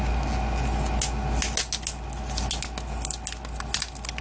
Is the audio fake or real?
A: real